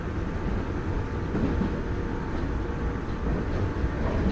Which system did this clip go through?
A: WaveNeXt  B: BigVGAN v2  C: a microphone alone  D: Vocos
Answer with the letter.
C